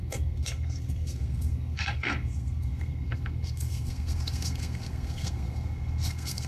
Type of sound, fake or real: fake